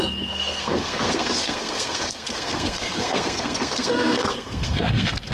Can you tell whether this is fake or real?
fake